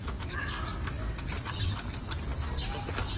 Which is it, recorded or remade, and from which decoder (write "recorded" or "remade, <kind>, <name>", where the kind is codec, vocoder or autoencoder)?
recorded